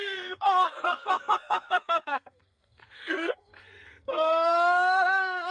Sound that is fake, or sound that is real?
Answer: fake